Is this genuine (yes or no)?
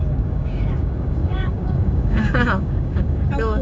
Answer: no